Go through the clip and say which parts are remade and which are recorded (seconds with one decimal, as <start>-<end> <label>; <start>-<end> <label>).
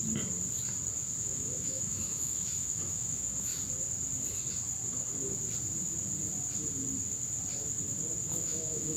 0.0-1.2 recorded; 1.2-3.5 remade; 3.5-8.3 recorded; 8.3-9.0 remade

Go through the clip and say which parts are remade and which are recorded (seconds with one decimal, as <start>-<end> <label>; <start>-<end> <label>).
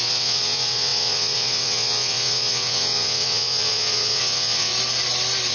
0.0-4.7 remade; 4.7-5.5 recorded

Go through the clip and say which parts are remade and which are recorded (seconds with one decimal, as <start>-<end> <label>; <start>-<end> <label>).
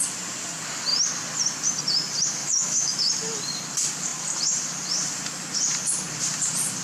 0.0-2.4 recorded; 2.4-3.1 remade; 3.1-6.8 recorded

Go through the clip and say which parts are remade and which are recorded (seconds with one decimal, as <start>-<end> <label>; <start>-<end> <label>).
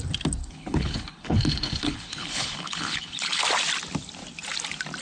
0.0-0.4 recorded; 0.4-3.4 remade; 3.4-5.0 recorded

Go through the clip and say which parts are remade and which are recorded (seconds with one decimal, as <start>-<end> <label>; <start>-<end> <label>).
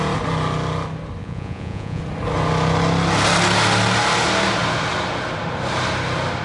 0.0-1.2 recorded; 1.2-2.0 remade; 2.0-6.4 recorded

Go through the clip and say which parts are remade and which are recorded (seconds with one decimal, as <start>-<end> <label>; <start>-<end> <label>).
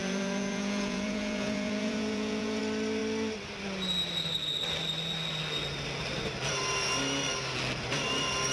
0.0-2.6 remade; 2.6-8.5 recorded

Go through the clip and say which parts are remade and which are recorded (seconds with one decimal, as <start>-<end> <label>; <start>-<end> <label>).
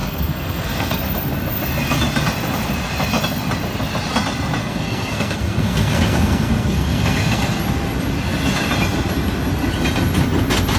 0.0-1.0 remade; 1.0-4.6 recorded; 4.6-7.6 remade; 7.6-10.8 recorded